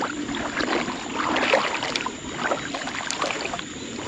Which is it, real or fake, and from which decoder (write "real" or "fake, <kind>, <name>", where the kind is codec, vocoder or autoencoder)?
real